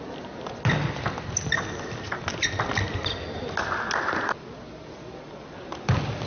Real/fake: real